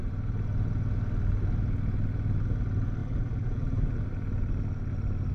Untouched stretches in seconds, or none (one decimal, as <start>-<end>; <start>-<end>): 0.0-3.0; 4.0-5.3